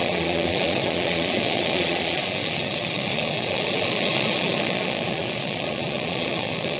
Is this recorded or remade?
remade